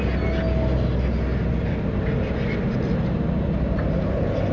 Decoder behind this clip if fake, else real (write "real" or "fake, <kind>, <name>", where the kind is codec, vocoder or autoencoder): real